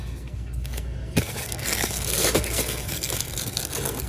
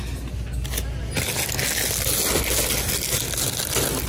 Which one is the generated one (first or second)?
first